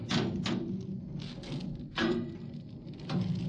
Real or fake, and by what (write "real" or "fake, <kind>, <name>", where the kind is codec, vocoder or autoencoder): real